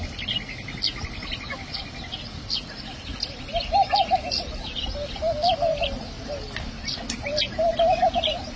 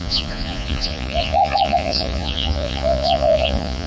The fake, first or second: second